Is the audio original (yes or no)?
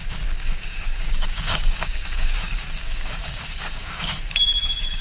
no